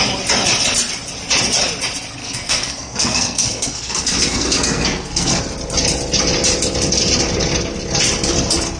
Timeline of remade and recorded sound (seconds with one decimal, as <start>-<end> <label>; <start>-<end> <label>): 0.0-2.2 recorded; 2.2-5.4 remade; 5.4-8.8 recorded